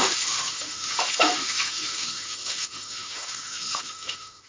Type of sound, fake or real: fake